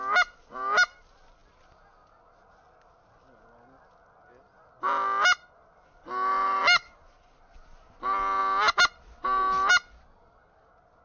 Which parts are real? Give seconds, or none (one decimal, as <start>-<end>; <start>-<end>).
0.0-11.0